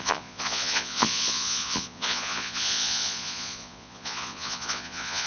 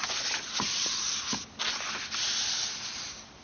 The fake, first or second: first